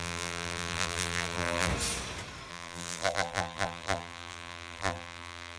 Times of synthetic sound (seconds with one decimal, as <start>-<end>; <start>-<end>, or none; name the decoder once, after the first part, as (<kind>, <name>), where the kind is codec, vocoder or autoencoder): 0.0-1.7 (vocoder, BigVGAN v2); 2.5-5.6